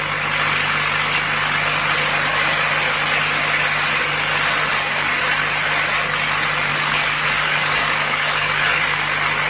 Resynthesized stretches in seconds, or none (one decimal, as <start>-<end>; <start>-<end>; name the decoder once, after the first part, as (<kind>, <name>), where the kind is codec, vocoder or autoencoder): 4.7-5.2 (codec, DAC); 6.7-8.8